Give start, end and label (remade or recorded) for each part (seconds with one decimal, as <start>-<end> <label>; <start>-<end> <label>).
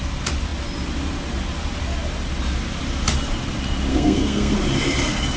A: 0.0-3.9 recorded; 3.9-4.5 remade; 4.5-5.4 recorded